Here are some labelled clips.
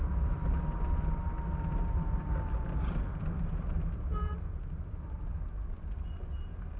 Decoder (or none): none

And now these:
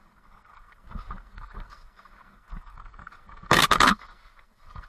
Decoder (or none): codec, SNAC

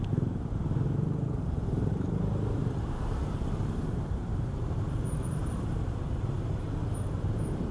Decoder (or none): vocoder, BigVGAN v2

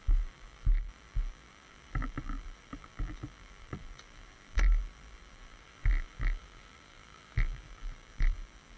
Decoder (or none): vocoder, BigVGAN v2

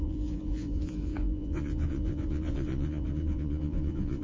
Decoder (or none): vocoder, Vocos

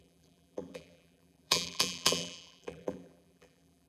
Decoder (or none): vocoder, BigVGAN v2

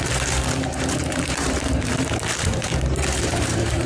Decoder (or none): vocoder, BigVGAN v2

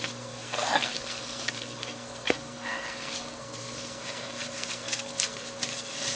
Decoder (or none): codec, SNAC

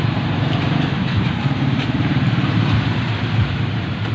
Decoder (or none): vocoder, BigVGAN v2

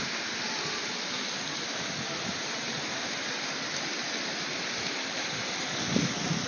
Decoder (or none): none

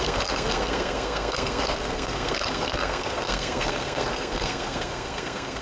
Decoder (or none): codec, SNAC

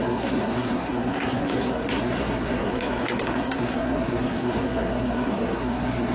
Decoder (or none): codec, SNAC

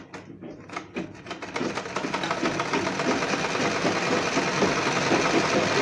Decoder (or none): none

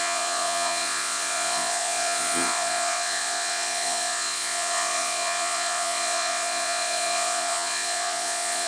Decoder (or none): vocoder, Vocos